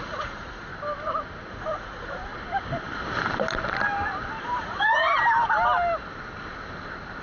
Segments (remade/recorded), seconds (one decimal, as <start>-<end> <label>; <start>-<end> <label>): 0.0-0.7 remade; 0.7-1.5 recorded; 1.5-2.3 remade; 2.3-4.4 recorded; 4.4-5.1 remade; 5.1-7.2 recorded